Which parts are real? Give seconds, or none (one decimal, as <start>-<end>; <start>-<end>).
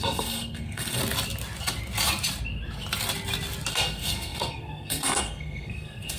1.0-3.7